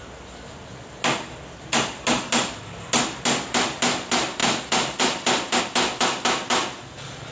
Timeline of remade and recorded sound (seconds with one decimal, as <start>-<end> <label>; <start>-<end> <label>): 0.0-4.4 recorded; 4.4-5.6 remade; 5.6-7.3 recorded